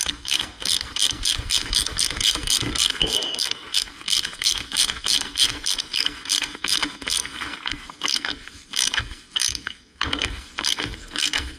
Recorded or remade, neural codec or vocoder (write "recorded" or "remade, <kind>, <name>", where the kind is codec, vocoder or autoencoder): remade, codec, SNAC